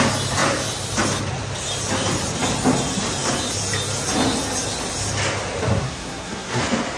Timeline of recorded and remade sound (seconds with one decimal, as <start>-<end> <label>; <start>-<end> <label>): 0.0-5.7 recorded; 5.7-6.6 remade; 6.6-7.0 recorded